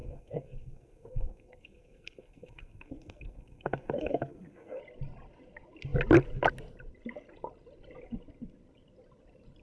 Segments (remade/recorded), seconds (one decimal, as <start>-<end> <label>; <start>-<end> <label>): 0.0-4.8 remade; 4.8-9.6 recorded